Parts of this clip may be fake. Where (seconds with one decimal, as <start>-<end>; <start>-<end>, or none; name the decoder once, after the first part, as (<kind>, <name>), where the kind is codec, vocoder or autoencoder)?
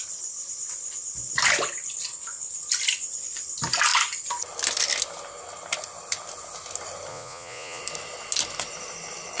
7.1-7.8 (vocoder, Vocos)